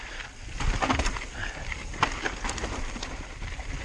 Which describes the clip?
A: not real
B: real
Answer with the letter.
A